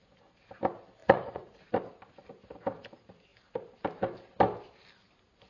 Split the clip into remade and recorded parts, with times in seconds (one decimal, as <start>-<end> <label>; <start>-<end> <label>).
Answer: 0.0-1.0 recorded; 1.0-1.6 remade; 1.6-5.5 recorded